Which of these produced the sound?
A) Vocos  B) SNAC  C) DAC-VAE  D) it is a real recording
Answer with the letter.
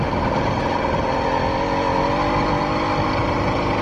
D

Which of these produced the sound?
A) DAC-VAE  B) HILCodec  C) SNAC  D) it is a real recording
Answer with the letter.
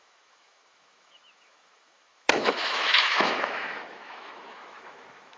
A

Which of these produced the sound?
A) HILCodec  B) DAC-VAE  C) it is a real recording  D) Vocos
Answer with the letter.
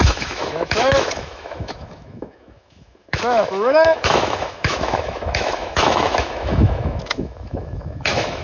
B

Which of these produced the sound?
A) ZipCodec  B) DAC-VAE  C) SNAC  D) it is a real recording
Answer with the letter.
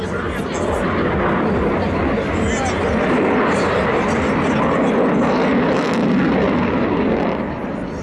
D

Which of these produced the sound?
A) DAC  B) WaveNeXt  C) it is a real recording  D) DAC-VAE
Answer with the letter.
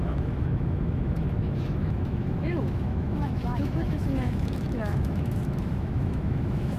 D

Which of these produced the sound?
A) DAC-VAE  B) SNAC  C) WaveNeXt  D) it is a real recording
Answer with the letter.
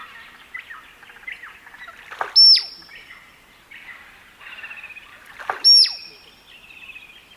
D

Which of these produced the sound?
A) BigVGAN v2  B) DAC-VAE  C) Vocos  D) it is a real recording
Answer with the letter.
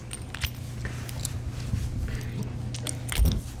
D